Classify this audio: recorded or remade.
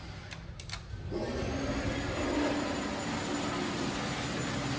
recorded